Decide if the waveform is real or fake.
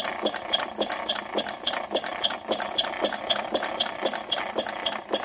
real